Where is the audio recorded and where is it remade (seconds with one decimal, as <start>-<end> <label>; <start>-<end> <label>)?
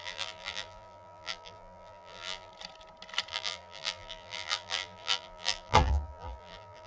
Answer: 0.0-2.5 remade; 2.5-3.3 recorded; 3.3-6.9 remade